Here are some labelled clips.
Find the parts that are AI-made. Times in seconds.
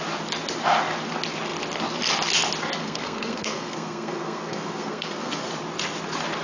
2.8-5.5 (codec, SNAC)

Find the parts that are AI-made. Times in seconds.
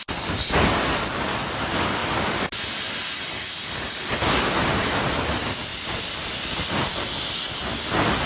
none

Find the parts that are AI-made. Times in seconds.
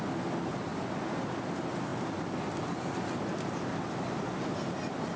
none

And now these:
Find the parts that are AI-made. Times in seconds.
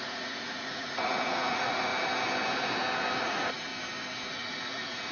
0.0-1.9 (vocoder, Vocos); 3.2-3.7; 4.3-5.1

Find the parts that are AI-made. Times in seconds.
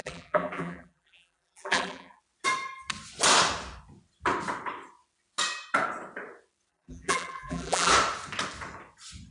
0.0-2.2 (vocoder, BigVGAN v2); 6.7-7.9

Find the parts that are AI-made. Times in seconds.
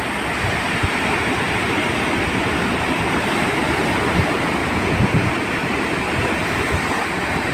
4.6-5.3 (vocoder, Vocos)